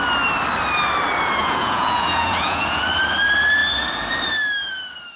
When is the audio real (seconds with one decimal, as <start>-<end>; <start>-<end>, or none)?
0.0-1.4; 2.8-5.2